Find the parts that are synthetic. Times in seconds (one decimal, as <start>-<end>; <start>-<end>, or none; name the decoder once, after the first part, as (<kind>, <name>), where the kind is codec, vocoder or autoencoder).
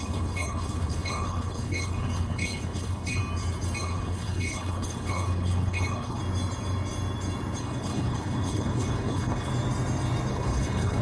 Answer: 0.0-3.2 (codec, HILCodec); 3.8-6.2; 7.6-9.5; 10.3-11.0